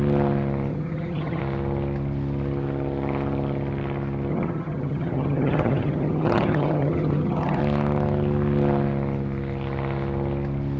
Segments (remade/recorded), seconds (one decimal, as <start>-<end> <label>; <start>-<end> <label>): 0.0-0.7 recorded; 0.7-1.4 remade; 1.4-4.3 recorded; 4.3-7.6 remade; 7.6-10.8 recorded